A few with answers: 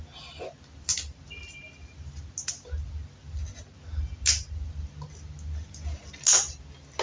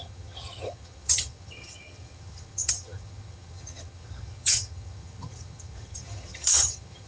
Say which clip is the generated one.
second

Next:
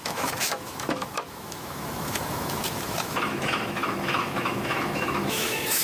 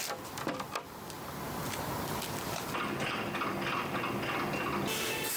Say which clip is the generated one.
first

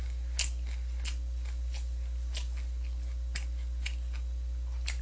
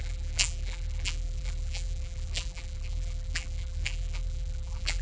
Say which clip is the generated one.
second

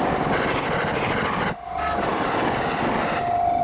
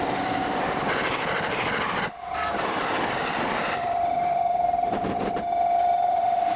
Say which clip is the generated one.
second